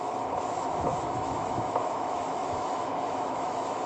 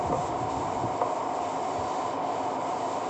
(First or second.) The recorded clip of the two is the second